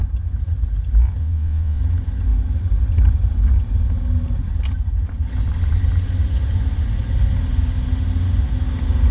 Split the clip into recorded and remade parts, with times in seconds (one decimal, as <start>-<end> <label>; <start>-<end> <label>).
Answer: 0.0-1.2 recorded; 1.2-1.8 remade; 1.8-9.1 recorded